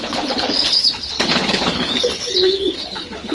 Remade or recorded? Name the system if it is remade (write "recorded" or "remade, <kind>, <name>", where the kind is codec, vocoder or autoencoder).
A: remade, codec, HILCodec